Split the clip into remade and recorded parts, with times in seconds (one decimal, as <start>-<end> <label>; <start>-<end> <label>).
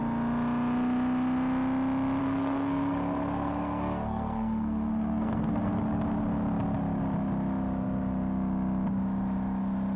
0.0-2.2 recorded; 2.2-5.7 remade; 5.7-10.0 recorded